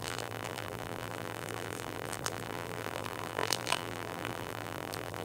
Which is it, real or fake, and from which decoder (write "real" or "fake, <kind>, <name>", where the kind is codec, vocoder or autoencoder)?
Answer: fake, vocoder, BigVGAN v2